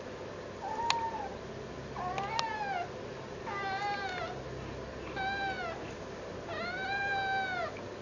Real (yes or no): yes